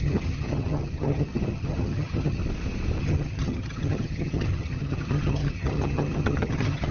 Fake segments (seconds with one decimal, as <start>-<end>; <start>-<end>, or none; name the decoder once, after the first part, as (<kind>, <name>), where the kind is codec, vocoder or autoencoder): 0.0-2.4 (vocoder, HiFi-GAN); 3.0-6.9

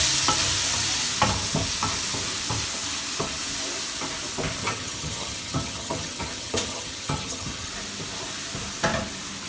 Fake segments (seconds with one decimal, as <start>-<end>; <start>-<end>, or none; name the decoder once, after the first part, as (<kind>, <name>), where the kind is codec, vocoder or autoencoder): 4.6-7.7 (vocoder, HiFi-GAN)

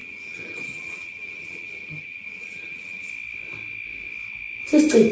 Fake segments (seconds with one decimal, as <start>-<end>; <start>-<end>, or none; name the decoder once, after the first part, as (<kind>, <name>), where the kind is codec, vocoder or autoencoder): 0.0-3.1 (vocoder, HiFi-GAN)

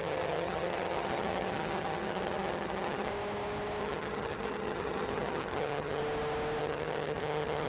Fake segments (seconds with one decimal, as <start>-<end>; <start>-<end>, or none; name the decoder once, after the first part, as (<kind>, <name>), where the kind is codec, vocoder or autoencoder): 0.0-3.1 (vocoder, HiFi-GAN); 3.8-6.0; 6.6-7.7

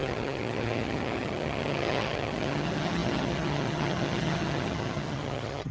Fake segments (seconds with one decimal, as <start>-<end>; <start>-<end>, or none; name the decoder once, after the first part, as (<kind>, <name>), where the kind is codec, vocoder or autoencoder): 0.0-5.7 (vocoder, HiFi-GAN)

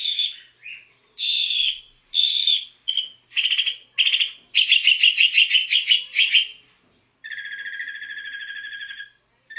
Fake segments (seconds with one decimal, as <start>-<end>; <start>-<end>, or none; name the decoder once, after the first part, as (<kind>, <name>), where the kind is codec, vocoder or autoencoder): none

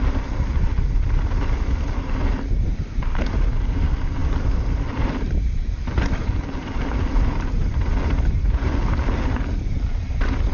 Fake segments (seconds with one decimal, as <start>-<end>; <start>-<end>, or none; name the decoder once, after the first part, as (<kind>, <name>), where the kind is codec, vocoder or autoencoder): none

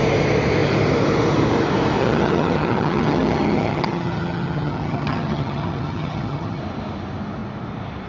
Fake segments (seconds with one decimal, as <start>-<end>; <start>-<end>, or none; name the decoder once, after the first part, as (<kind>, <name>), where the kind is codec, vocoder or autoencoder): 2.0-6.6 (vocoder, HiFi-GAN)